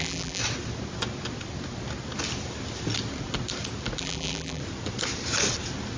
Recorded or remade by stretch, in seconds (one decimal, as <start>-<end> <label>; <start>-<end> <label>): 0.0-0.4 remade; 0.4-4.0 recorded; 4.0-4.6 remade; 4.6-6.0 recorded